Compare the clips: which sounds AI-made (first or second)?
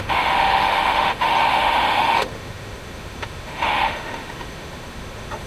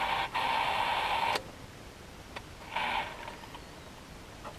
first